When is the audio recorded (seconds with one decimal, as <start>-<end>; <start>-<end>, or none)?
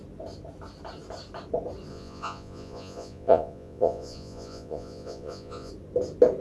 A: 0.0-1.9; 5.7-6.4